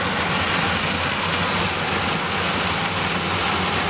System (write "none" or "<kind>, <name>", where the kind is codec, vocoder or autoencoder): none